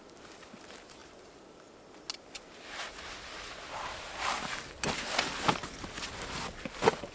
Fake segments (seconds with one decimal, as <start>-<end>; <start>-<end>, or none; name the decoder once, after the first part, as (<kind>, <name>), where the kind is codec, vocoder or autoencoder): none